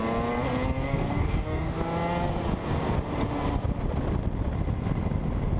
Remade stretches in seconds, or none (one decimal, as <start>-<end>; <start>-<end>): 0.9-1.8